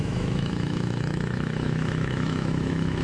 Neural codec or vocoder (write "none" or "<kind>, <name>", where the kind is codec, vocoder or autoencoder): autoencoder, DAC-VAE